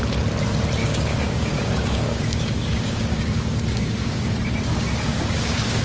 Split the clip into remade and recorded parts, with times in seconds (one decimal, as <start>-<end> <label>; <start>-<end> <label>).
0.0-0.8 recorded; 0.8-4.3 remade; 4.3-4.7 recorded; 4.7-5.8 remade

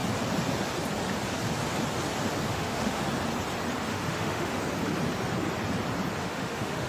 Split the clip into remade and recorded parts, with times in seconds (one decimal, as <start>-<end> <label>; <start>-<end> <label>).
0.0-2.5 recorded; 2.5-3.1 remade; 3.1-3.9 recorded; 3.9-4.6 remade; 4.6-6.2 recorded; 6.2-6.9 remade

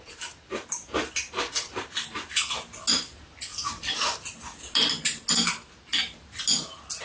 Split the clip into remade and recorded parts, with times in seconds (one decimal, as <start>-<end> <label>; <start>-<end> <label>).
0.0-7.0 recorded

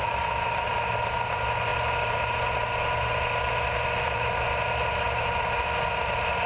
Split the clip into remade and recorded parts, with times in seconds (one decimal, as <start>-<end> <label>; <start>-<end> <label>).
0.0-6.5 recorded